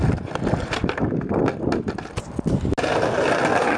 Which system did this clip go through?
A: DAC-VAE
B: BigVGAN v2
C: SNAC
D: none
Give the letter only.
D